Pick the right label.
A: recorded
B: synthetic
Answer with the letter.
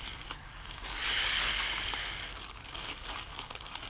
B